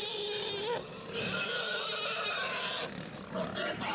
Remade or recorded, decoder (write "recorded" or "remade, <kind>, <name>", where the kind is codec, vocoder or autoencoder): recorded